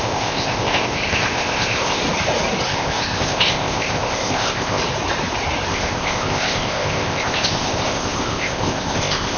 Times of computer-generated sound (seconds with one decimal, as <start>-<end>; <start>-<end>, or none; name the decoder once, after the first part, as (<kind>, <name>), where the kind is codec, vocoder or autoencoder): 0.0-2.0 (codec, ZipCodec); 2.7-4.8; 5.7-9.4